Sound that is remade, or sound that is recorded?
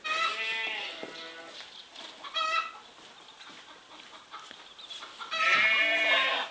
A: recorded